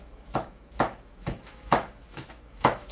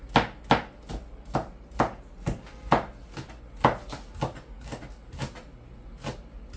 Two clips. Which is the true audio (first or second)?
second